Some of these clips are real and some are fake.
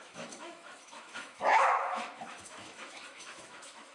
fake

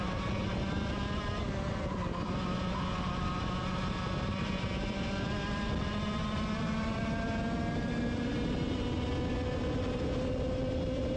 real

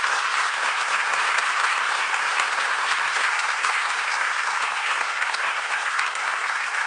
fake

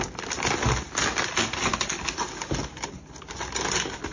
real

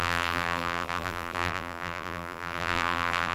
fake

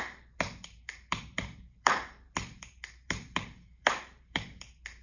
fake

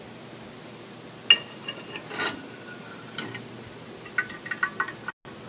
real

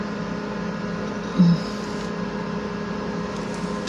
real